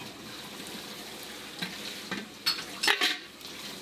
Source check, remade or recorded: recorded